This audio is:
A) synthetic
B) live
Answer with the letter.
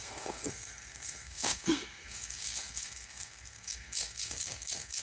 A